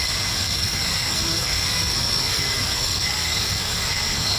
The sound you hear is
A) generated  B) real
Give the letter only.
A